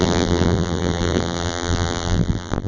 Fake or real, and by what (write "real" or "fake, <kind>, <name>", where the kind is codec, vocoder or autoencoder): fake, vocoder, BigVGAN v2